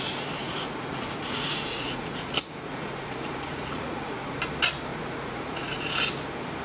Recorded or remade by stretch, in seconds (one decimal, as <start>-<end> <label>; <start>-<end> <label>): 0.0-0.4 recorded; 0.4-4.4 remade; 4.4-4.9 recorded; 4.9-5.9 remade; 5.9-6.6 recorded